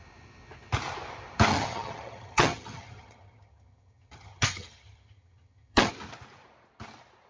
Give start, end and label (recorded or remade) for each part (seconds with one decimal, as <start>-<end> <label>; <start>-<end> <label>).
0.0-1.5 recorded; 1.5-5.9 remade; 5.9-7.3 recorded